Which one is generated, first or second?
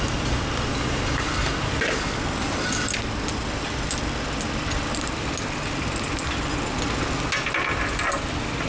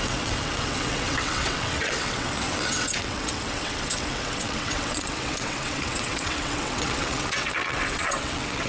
second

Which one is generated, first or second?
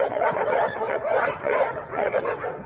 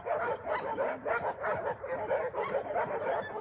first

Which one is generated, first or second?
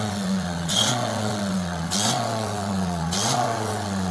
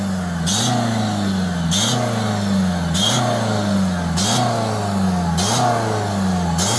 first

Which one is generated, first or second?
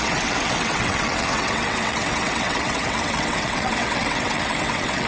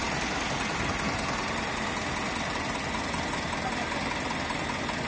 first